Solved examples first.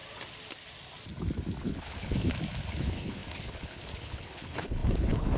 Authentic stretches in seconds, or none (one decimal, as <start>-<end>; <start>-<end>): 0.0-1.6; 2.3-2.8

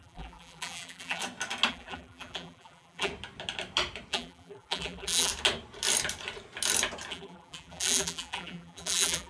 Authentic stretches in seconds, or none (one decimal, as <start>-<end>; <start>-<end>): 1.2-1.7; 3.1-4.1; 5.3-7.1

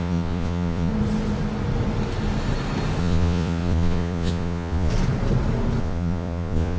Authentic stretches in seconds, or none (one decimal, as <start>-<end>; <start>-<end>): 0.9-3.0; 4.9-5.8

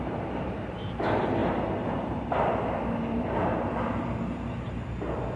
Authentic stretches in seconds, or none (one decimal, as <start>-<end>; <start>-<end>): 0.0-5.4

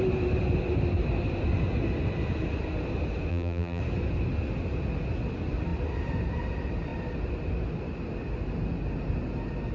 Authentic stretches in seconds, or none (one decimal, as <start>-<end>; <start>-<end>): 0.0-3.3; 3.8-9.7